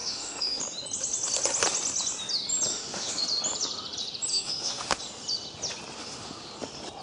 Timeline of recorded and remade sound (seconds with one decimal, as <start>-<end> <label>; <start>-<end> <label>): 0.0-0.6 remade; 0.6-2.7 recorded; 2.7-3.2 remade; 3.2-4.3 recorded; 4.3-5.0 remade; 5.0-6.0 recorded; 6.0-6.5 remade; 6.5-7.0 recorded